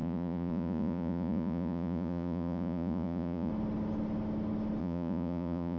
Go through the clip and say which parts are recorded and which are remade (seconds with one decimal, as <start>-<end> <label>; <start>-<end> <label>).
0.0-3.5 remade; 3.5-4.8 recorded; 4.8-5.8 remade